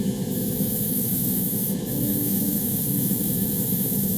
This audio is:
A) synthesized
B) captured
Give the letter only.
A